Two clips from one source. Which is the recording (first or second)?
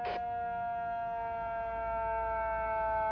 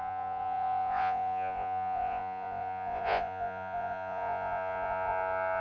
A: first